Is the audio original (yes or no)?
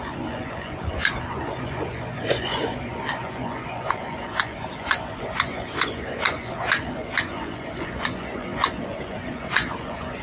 no